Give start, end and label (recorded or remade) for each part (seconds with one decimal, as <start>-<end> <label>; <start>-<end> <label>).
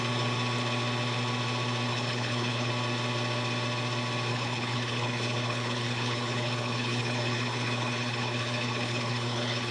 0.0-1.9 recorded; 1.9-2.7 remade; 2.7-4.3 recorded; 4.3-9.7 remade